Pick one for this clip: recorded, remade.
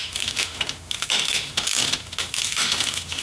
remade